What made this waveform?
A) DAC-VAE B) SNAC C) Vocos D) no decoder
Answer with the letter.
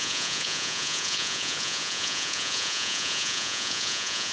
C